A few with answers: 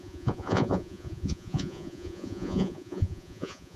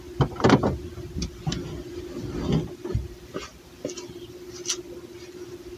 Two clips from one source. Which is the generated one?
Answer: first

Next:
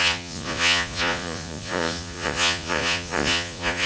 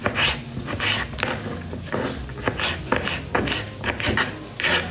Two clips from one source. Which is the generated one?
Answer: first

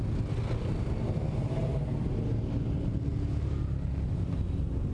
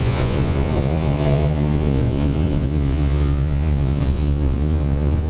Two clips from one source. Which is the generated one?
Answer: second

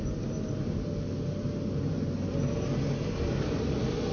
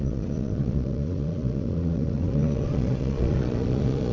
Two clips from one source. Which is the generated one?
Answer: second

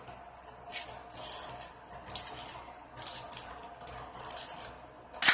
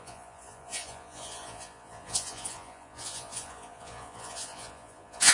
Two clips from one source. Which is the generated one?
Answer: second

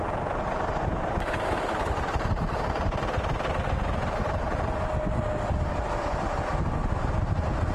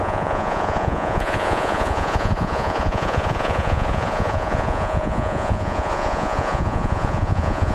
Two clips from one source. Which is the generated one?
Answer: second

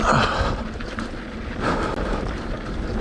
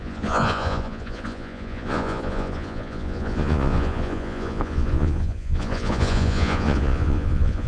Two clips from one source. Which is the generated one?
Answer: second